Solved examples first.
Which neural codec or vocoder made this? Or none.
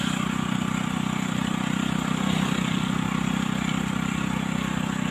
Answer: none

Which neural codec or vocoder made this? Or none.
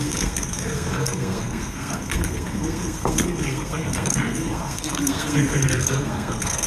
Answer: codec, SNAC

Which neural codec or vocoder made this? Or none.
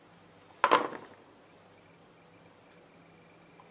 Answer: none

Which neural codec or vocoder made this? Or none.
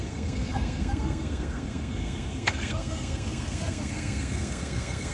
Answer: codec, SNAC